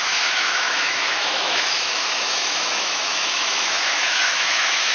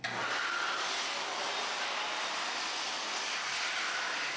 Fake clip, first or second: first